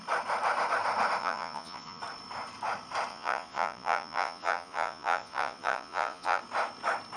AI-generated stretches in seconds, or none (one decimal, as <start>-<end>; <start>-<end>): 1.2-2.0; 3.1-6.4

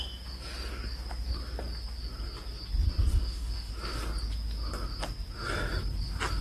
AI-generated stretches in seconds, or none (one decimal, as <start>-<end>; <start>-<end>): 3.1-3.7

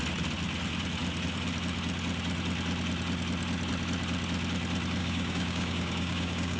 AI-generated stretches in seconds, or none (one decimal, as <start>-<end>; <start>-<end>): 5.0-6.6

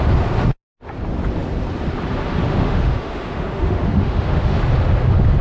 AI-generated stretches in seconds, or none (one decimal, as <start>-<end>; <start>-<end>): 2.4-4.6

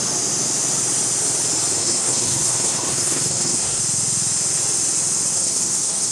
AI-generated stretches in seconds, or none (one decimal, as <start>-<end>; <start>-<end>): 1.8-3.8; 5.3-6.1

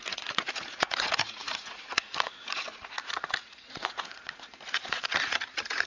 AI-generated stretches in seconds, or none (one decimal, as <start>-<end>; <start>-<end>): 0.0-5.9